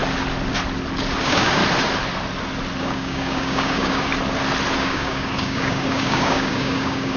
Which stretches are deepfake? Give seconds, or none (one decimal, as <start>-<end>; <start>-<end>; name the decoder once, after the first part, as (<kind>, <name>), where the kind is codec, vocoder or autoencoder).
1.2-1.6 (codec, DAC); 2.8-4.1; 4.8-7.2